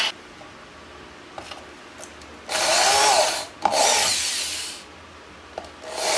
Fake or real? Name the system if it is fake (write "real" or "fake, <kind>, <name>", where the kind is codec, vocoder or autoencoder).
real